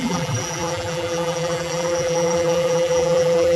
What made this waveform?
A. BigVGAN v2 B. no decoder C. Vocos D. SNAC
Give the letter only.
A